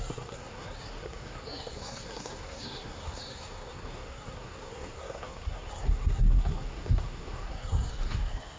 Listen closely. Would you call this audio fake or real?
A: fake